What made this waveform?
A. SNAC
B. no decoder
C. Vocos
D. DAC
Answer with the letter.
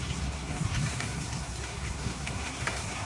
A